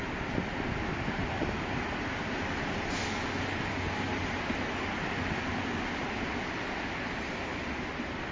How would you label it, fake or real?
real